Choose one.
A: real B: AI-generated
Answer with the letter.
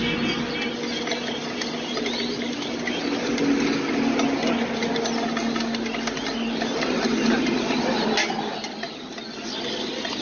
A